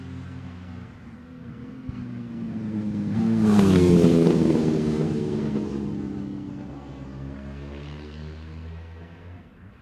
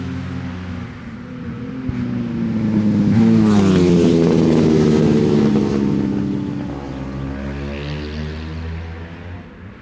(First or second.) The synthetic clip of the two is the first